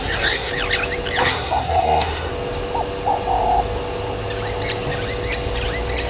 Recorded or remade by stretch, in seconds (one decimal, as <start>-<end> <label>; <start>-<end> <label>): 0.0-0.5 remade; 0.5-1.2 recorded; 1.2-2.3 remade; 2.3-6.1 recorded